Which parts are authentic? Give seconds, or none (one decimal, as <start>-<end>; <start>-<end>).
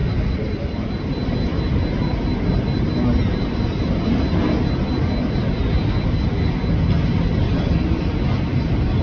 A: 0.0-9.0